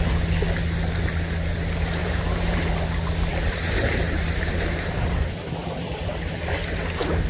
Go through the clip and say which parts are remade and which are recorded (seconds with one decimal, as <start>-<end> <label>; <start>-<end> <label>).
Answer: 0.0-2.0 recorded; 2.0-2.7 remade; 2.7-3.3 recorded; 3.3-6.3 remade; 6.3-7.3 recorded